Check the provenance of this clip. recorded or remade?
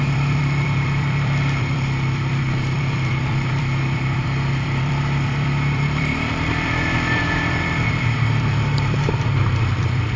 remade